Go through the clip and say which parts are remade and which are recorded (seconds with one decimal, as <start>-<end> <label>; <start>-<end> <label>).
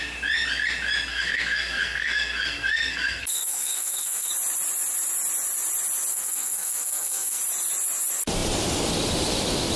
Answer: 0.0-1.1 recorded; 1.1-4.3 remade; 4.3-6.1 recorded; 6.1-7.4 remade; 7.4-9.8 recorded